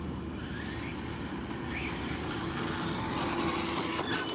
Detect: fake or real real